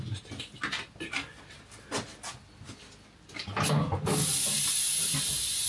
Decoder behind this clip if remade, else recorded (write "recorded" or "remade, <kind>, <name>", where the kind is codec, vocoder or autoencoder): recorded